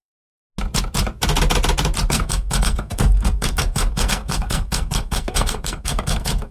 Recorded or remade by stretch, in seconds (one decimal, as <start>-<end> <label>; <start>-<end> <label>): 0.0-0.4 remade; 0.4-2.1 recorded; 2.1-6.5 remade